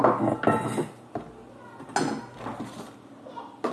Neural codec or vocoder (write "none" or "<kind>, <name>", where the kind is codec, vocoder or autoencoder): none